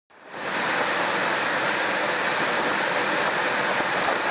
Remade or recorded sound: recorded